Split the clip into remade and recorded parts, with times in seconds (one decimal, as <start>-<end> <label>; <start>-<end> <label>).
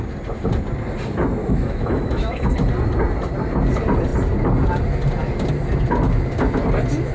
0.0-1.4 recorded; 1.4-2.5 remade; 2.5-7.1 recorded